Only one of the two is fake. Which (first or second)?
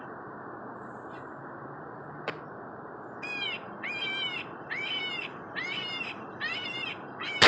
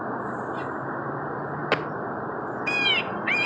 first